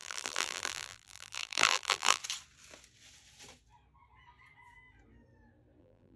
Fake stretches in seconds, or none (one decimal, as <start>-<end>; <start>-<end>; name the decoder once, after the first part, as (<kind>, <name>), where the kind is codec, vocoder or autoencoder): 0.0-2.2 (vocoder, BigVGAN v2); 5.8-6.2